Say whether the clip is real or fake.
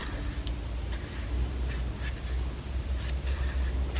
real